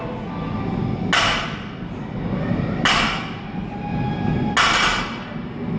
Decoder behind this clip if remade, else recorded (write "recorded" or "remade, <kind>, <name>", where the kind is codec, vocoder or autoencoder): recorded